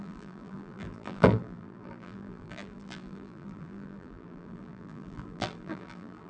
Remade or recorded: remade